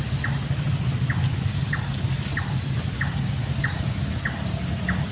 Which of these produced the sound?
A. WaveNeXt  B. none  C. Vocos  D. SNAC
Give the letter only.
B